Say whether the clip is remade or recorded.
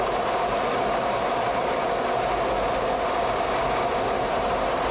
recorded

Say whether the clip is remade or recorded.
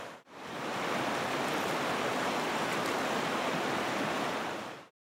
recorded